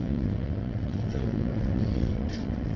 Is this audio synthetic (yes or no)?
yes